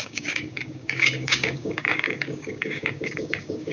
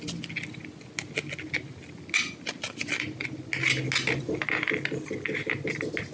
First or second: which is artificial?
first